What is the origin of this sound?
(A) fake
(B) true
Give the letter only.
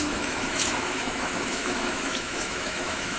A